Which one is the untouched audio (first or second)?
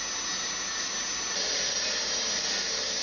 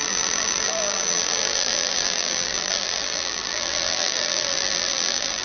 first